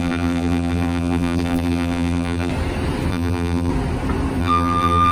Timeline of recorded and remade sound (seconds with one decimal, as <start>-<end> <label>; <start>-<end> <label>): 0.0-2.5 remade; 2.5-3.1 recorded; 3.1-3.7 remade; 3.7-4.4 recorded; 4.4-5.1 remade